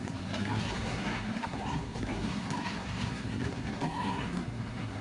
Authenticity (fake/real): fake